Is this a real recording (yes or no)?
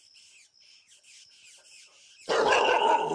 yes